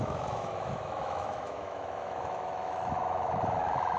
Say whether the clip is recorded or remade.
remade